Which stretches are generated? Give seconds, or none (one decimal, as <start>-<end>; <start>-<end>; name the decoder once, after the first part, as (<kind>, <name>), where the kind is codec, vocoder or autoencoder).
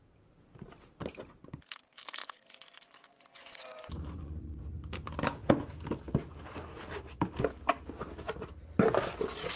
2.2-4.6 (vocoder, Vocos)